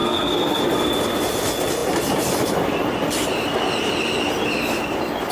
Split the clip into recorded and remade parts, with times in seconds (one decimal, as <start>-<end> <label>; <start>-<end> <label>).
0.0-0.6 remade; 0.6-5.3 recorded